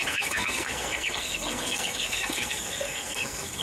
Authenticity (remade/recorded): remade